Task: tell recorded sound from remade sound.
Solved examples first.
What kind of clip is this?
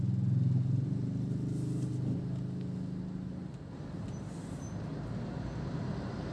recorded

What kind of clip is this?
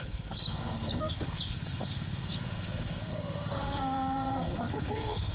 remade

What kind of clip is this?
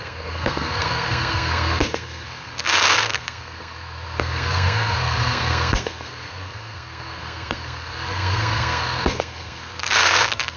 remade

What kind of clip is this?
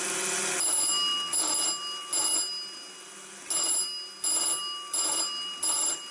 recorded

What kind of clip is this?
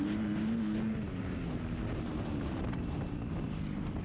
recorded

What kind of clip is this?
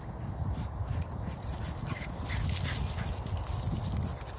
recorded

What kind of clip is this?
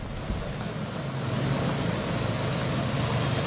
recorded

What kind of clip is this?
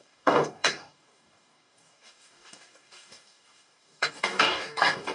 remade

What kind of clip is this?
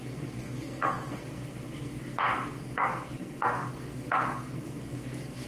remade